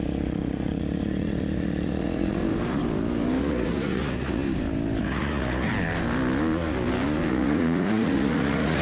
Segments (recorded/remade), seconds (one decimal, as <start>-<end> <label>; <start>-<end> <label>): 0.0-2.4 remade; 2.4-3.4 recorded; 3.4-4.4 remade; 4.4-5.0 recorded; 5.0-5.7 remade; 5.7-7.3 recorded; 7.3-8.8 remade